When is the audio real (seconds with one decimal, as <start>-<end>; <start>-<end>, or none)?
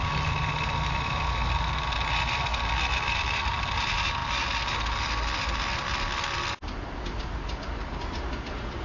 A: 0.0-8.8